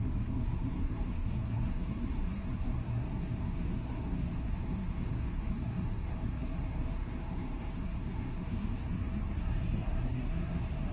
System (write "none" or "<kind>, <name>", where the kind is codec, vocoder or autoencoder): codec, SNAC